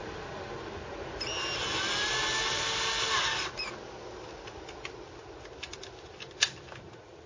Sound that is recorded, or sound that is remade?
recorded